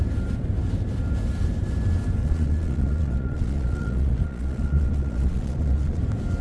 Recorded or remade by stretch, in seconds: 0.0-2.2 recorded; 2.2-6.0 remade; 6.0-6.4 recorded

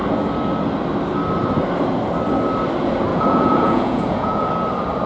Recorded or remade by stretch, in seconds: 0.0-3.1 recorded; 3.1-4.5 remade; 4.5-5.1 recorded

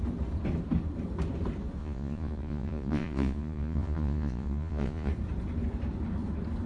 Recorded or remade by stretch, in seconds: 0.0-1.8 recorded; 1.8-5.1 remade; 5.1-6.7 recorded